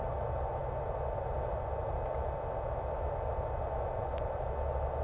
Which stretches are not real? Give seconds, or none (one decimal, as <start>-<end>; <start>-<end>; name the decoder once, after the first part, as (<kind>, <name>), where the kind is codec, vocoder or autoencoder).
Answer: none